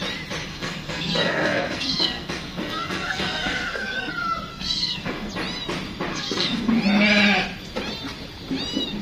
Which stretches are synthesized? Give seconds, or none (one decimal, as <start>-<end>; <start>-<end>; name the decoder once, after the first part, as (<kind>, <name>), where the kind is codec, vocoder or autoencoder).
0.5-4.1 (codec, SNAC); 4.5-5.3; 6.1-6.7